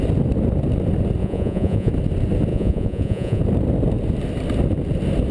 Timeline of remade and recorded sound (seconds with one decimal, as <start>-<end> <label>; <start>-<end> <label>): 0.0-1.2 recorded; 1.2-1.9 remade; 1.9-2.5 recorded; 2.5-3.4 remade; 3.4-5.3 recorded